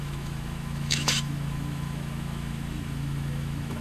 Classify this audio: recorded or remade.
remade